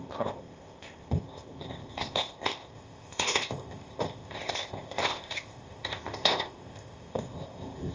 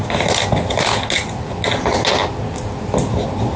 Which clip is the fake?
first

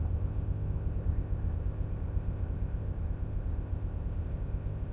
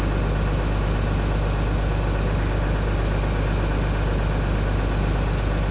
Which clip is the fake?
first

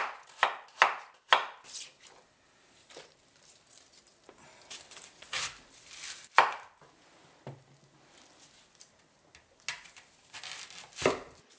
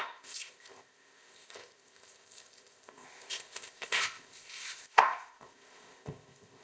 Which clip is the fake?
second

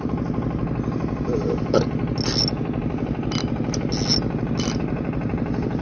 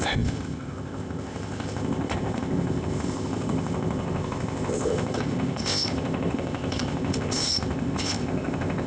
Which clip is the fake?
second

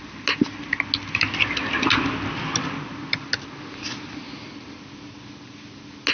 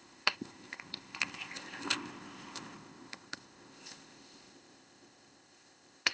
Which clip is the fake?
second